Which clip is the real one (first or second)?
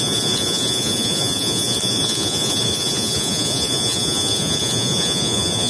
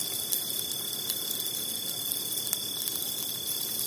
second